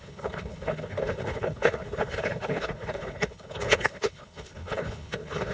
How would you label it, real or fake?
fake